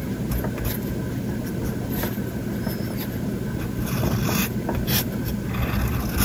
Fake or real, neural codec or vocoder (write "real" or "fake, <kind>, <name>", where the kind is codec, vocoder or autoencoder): real